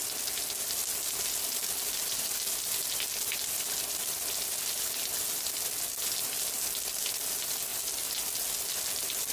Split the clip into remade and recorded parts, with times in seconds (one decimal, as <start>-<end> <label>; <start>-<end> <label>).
0.0-9.3 recorded